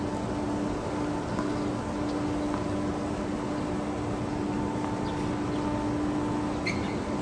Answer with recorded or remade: recorded